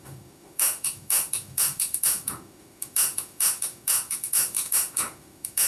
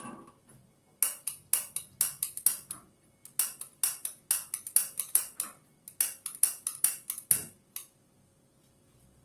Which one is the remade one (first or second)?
first